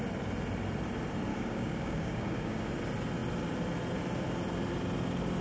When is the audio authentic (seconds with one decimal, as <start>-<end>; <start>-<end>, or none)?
0.0-1.3; 2.7-5.4